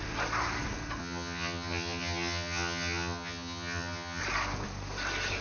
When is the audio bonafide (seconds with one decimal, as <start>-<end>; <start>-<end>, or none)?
0.0-1.0; 4.2-5.4